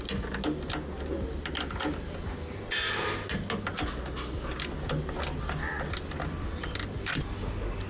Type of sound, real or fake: real